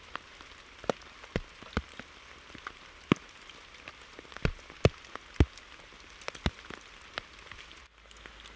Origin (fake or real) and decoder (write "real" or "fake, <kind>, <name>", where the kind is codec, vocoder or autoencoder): real